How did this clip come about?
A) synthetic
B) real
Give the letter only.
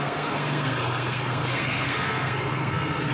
A